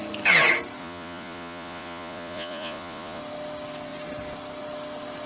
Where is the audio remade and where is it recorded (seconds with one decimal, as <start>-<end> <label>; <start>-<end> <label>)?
0.0-0.8 recorded; 0.8-3.2 remade; 3.2-5.3 recorded